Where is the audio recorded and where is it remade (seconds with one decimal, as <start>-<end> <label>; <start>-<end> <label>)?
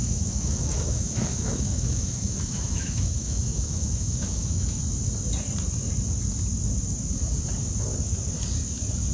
0.0-4.8 remade; 4.8-9.1 recorded